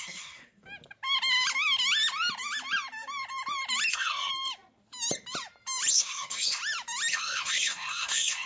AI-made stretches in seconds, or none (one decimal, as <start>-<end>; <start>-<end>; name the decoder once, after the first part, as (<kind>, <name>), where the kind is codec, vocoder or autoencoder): 0.0-0.6 (codec, SNAC); 3.9-4.3; 5.9-6.6; 7.1-8.5